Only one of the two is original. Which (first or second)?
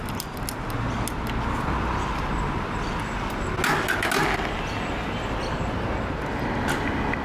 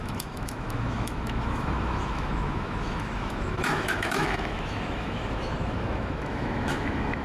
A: first